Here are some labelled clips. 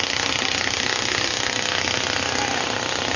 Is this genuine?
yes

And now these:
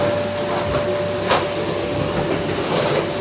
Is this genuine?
yes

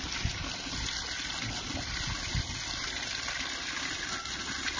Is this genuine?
yes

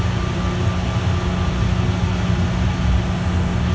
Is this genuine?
yes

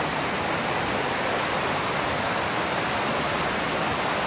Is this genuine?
yes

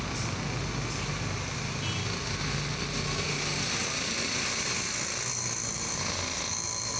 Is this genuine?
yes